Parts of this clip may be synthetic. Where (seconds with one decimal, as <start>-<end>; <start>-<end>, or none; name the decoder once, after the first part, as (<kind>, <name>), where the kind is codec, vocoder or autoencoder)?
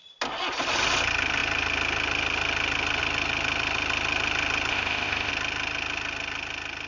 4.7-5.3 (codec, ZipCodec)